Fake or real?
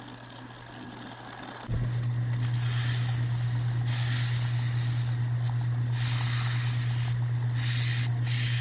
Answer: real